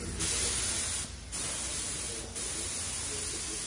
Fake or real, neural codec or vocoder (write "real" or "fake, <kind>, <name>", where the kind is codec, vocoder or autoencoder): real